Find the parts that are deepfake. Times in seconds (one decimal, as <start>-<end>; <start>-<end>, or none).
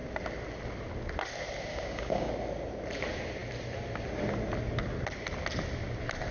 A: 1.7-2.3